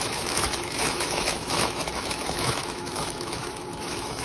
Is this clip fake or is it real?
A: fake